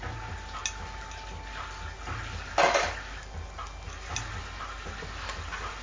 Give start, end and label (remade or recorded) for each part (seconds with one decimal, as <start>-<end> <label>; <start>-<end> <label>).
0.0-5.8 recorded